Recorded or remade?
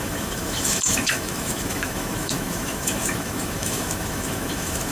remade